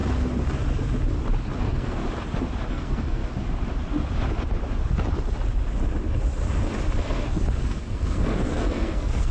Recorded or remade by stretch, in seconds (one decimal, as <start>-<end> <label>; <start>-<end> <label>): 0.0-1.6 recorded; 1.6-2.0 remade; 2.0-2.7 recorded; 2.7-3.2 remade; 3.2-7.0 recorded; 7.0-9.3 remade